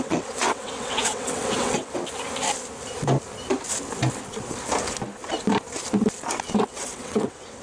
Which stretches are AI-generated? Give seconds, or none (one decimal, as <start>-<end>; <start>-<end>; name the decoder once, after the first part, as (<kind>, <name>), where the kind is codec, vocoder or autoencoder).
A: 0.0-2.0 (vocoder, WaveNeXt); 6.6-7.6